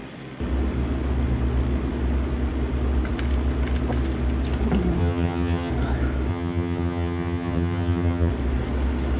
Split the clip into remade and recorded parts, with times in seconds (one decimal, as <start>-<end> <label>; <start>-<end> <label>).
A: 0.0-5.0 recorded; 5.0-5.7 remade; 5.7-6.3 recorded; 6.3-8.3 remade; 8.3-9.2 recorded